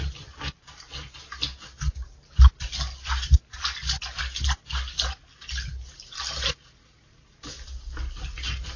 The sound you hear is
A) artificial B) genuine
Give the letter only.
B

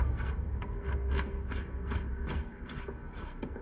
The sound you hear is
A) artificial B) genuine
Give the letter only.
A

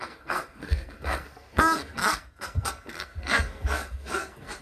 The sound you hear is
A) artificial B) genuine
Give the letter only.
A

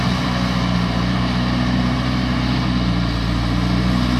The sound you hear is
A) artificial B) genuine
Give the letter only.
B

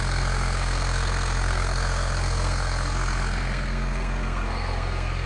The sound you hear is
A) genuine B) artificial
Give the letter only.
B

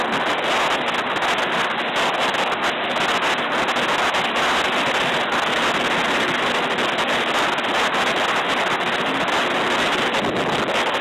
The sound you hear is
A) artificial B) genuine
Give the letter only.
B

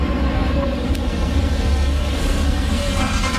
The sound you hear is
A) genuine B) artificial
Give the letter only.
B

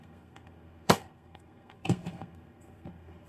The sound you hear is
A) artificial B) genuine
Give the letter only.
A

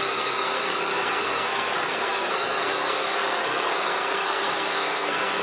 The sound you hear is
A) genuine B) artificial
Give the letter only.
B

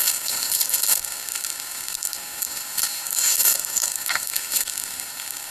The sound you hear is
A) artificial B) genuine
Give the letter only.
A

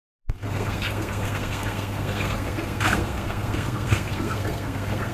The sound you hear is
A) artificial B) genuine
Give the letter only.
A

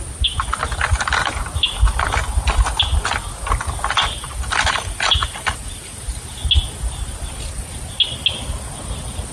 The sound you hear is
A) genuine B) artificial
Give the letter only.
A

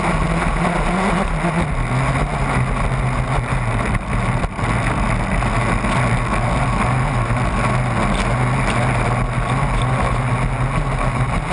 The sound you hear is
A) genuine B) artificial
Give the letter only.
A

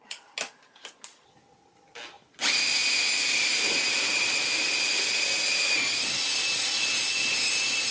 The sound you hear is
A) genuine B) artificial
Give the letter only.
A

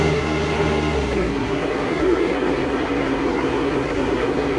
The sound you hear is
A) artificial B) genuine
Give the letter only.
A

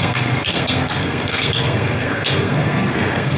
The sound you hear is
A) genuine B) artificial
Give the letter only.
B